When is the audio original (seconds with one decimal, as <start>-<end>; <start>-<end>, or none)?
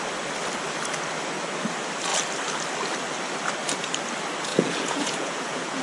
0.0-4.5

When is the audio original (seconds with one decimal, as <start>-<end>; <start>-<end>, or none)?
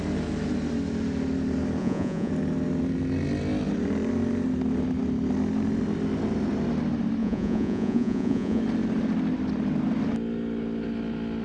0.0-1.8; 2.3-7.2; 8.6-11.4